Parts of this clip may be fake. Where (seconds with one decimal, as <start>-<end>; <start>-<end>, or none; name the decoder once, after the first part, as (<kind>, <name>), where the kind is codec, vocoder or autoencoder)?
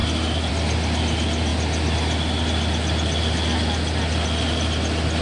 none